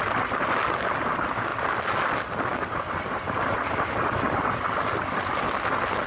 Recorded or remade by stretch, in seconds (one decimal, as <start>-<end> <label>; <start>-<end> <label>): 0.0-6.1 recorded